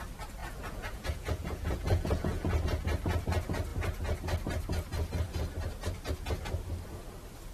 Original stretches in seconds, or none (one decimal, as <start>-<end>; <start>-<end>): 0.0-0.4; 2.6-7.5